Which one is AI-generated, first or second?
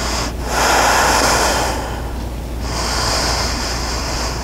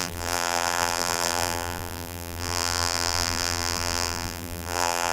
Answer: second